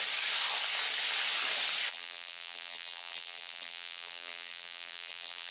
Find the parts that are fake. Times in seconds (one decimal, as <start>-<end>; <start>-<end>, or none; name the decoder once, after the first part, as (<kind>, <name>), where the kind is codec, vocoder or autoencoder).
1.9-5.5 (vocoder, BigVGAN v2)